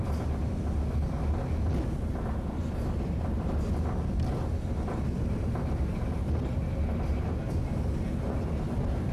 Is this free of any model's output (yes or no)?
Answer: yes